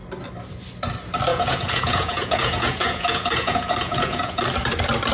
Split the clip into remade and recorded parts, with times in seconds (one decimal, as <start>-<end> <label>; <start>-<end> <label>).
0.0-1.3 recorded; 1.3-4.4 remade; 4.4-5.1 recorded